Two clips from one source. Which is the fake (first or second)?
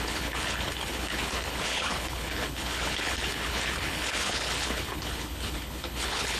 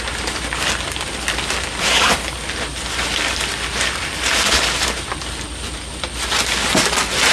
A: first